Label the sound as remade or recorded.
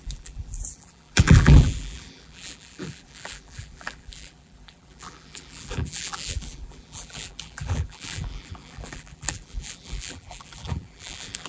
remade